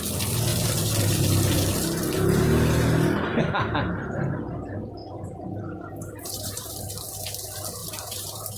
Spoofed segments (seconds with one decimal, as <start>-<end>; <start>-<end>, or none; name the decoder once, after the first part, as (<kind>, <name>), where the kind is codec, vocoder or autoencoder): 5.0-6.7 (vocoder, BigVGAN v2); 7.8-8.6